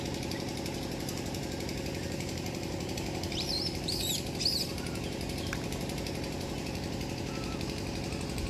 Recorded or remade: remade